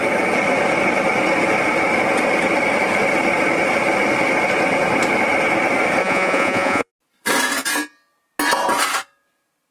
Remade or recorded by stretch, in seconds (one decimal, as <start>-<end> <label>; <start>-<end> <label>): 0.0-6.0 recorded; 6.0-6.9 remade; 6.9-9.7 recorded